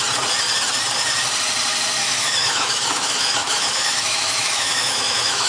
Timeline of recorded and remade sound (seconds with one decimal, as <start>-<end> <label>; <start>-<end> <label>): 0.0-2.0 recorded; 2.0-5.5 remade